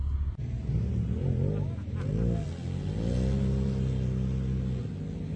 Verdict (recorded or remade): recorded